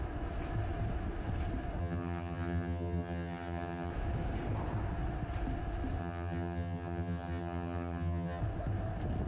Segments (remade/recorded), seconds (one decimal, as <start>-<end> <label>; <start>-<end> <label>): 0.0-1.8 recorded; 1.8-3.9 remade; 3.9-6.0 recorded; 6.0-8.4 remade; 8.4-9.3 recorded

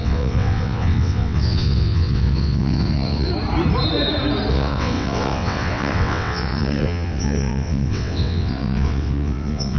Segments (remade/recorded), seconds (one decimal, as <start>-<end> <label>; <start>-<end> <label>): 0.0-3.3 remade; 3.3-4.5 recorded; 4.5-9.8 remade

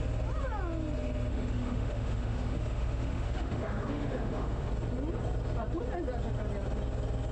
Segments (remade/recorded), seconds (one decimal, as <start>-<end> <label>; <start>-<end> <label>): 0.0-1.3 recorded; 1.3-4.7 remade; 4.7-7.3 recorded

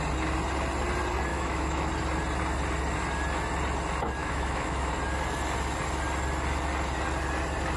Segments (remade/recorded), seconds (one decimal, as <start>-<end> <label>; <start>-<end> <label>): 0.0-1.3 recorded; 1.3-1.9 remade; 1.9-4.2 recorded; 4.2-4.9 remade; 4.9-7.8 recorded

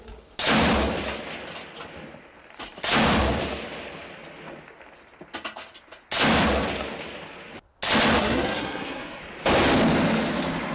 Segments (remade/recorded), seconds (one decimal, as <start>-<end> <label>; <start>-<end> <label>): 0.0-8.2 recorded; 8.2-9.2 remade; 9.2-10.7 recorded

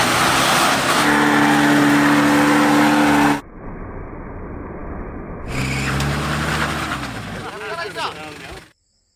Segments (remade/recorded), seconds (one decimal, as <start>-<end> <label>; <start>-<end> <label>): 0.0-9.2 recorded

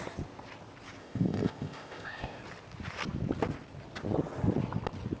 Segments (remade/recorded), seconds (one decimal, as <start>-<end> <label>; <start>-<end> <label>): 0.0-1.0 recorded; 1.0-2.4 remade; 2.4-5.2 recorded

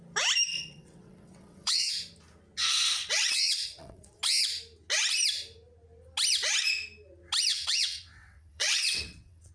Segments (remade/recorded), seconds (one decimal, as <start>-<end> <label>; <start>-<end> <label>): 0.0-0.5 recorded; 0.5-1.9 remade; 1.9-2.7 recorded; 2.7-4.2 remade; 4.2-7.5 recorded; 7.5-9.5 remade